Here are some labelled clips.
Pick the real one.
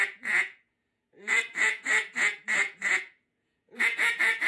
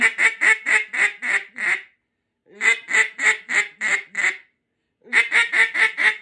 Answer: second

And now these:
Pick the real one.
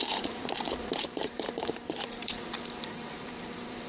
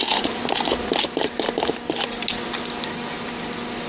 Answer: second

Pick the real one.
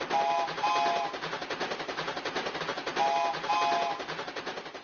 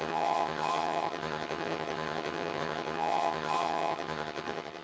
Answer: first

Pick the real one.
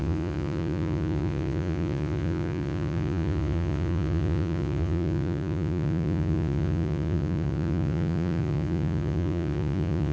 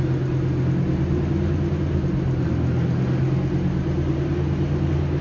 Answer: second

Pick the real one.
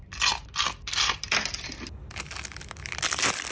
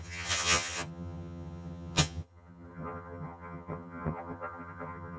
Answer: first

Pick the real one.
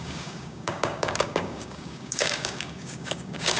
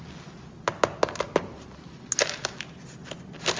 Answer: second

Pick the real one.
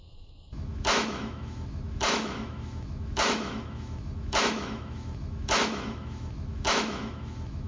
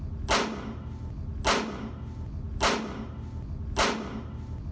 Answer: second